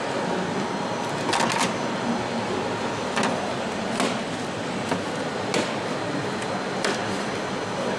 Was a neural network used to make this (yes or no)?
no